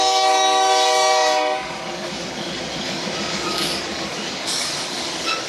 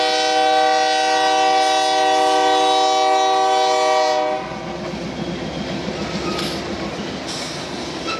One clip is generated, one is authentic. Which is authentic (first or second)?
second